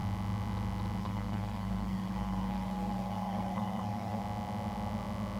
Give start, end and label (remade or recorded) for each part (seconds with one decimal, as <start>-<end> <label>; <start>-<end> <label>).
0.0-1.0 recorded; 1.0-4.2 remade; 4.2-5.4 recorded